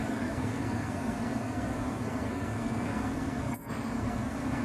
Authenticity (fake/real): fake